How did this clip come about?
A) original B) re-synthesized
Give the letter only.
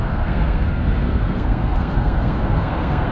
B